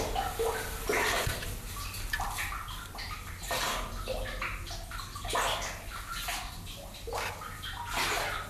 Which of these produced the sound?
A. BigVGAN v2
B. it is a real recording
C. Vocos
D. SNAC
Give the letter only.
B